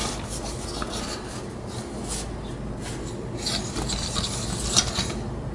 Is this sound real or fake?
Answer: real